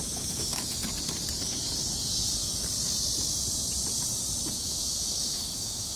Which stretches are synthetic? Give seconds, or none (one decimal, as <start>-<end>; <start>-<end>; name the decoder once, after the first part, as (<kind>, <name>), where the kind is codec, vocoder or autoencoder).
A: 0.0-0.8 (autoencoder, DAC-VAE); 4.4-6.0